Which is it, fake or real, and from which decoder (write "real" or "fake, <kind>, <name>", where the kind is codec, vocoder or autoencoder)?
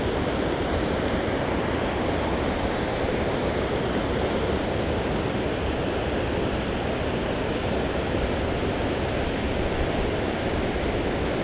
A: real